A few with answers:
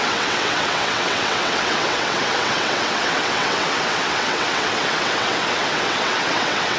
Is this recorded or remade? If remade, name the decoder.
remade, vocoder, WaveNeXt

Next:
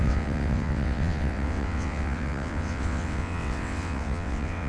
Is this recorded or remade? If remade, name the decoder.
remade, vocoder, WaveNeXt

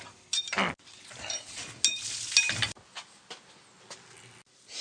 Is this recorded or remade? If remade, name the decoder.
recorded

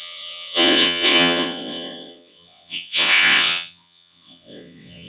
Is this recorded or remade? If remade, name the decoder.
remade, vocoder, WaveNeXt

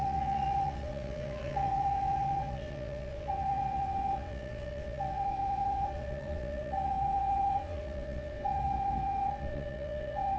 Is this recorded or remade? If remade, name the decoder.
remade, vocoder, WaveNeXt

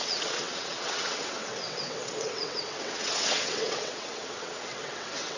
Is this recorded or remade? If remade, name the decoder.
remade, vocoder, WaveNeXt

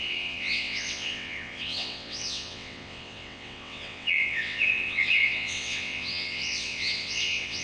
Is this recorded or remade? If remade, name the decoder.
remade, vocoder, WaveNeXt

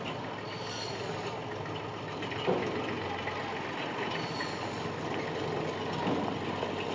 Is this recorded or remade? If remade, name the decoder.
recorded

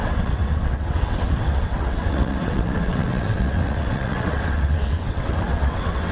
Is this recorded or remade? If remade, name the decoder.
remade, vocoder, WaveNeXt